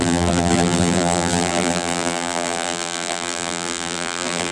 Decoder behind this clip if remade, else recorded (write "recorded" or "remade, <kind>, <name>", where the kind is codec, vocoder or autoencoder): remade, vocoder, BigVGAN v2